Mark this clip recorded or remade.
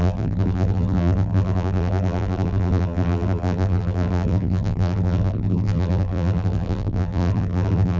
remade